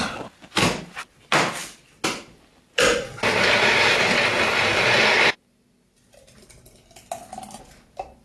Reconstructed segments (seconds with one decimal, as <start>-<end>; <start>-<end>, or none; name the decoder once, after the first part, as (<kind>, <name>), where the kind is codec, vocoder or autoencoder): none